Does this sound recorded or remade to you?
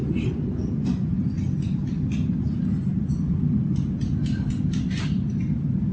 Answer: recorded